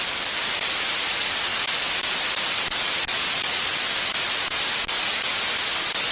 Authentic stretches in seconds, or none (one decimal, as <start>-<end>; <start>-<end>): 0.0-6.1